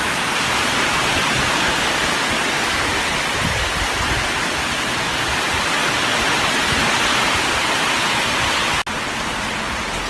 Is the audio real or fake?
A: real